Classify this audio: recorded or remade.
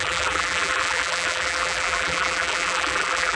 remade